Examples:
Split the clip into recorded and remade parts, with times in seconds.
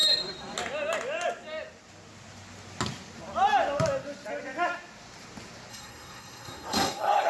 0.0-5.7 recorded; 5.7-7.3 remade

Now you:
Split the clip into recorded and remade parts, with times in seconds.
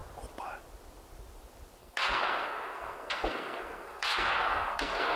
0.0-1.8 recorded; 1.8-5.2 remade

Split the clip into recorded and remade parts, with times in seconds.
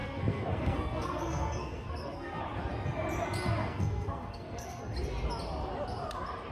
0.0-2.4 remade; 2.4-3.6 recorded; 3.6-4.8 remade; 4.8-6.5 recorded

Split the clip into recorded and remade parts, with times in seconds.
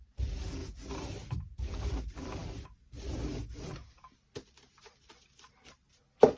0.0-6.4 recorded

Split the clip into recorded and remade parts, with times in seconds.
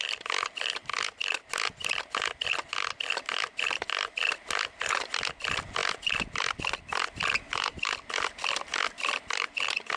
0.0-10.0 recorded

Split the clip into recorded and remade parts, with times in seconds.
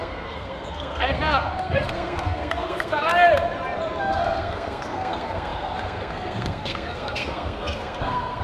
0.0-3.1 remade; 3.1-4.0 recorded; 4.0-8.4 remade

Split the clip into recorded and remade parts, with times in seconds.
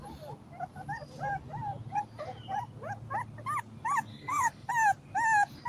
0.0-4.1 recorded; 4.1-4.7 remade; 4.7-5.7 recorded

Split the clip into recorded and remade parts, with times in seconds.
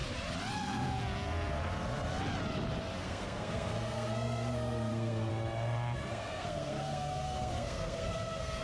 0.0-3.0 recorded; 3.0-5.3 remade; 5.3-6.1 recorded; 6.1-8.6 remade